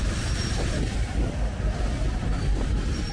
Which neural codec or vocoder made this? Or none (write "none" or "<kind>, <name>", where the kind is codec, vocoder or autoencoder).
none